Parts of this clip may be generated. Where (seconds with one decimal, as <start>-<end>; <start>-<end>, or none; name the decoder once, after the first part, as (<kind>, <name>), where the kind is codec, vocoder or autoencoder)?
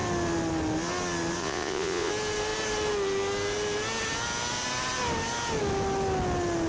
1.4-2.1 (vocoder, Vocos)